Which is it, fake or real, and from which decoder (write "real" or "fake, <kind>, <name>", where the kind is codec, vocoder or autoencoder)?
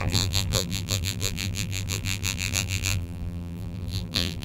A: fake, vocoder, BigVGAN v2